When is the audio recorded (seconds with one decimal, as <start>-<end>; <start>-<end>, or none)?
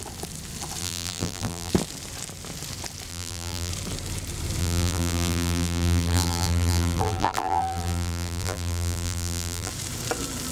0.0-0.8; 1.7-3.1; 3.7-4.6; 9.7-10.5